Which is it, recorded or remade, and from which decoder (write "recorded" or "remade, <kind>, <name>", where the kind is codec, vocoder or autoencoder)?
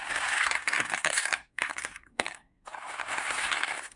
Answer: remade, codec, SNAC